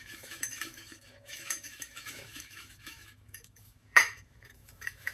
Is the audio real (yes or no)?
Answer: no